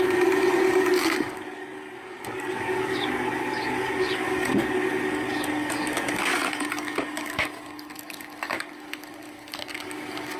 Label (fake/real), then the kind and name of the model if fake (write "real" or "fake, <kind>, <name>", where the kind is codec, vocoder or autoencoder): fake, codec, DAC